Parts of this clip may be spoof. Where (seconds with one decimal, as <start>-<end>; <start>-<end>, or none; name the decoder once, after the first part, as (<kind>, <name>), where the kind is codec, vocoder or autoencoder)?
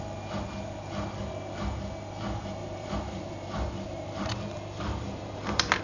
2.6-5.8 (vocoder, BigVGAN v2)